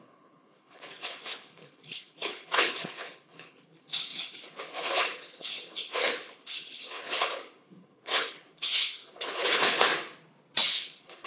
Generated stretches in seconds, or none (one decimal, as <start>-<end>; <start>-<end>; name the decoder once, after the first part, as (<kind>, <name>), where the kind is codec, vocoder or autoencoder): 0.0-9.9 (codec, HILCodec); 10.7-11.3